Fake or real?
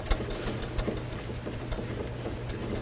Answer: real